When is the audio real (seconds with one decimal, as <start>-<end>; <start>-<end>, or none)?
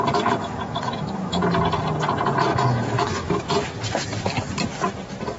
0.0-0.4; 1.4-2.5; 3.4-5.4